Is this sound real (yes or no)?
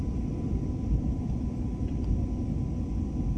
yes